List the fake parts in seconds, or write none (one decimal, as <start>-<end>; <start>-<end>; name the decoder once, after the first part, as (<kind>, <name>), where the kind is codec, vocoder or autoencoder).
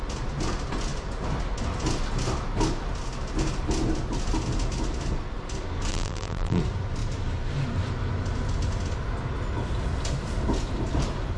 5.9-6.6 (vocoder, BigVGAN v2)